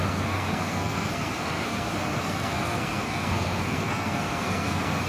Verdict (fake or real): fake